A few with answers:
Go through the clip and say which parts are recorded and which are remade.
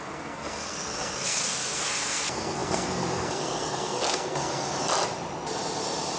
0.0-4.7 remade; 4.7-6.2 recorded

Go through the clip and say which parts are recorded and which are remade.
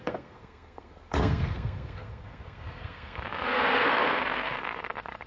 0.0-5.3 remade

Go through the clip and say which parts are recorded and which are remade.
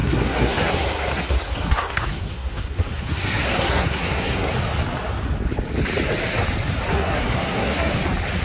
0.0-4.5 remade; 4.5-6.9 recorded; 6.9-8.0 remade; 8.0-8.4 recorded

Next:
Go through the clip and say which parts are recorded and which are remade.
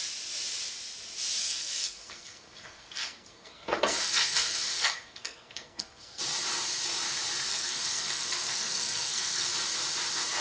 0.0-1.4 recorded; 1.4-6.2 remade; 6.2-7.5 recorded; 7.5-9.5 remade; 9.5-10.4 recorded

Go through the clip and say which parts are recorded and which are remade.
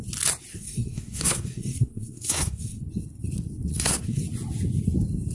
0.0-0.5 recorded; 0.5-2.8 remade; 2.8-3.7 recorded; 3.7-4.2 remade; 4.2-5.3 recorded